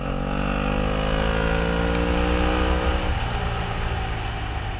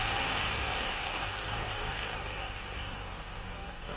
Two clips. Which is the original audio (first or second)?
first